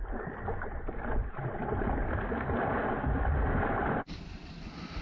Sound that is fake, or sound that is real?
real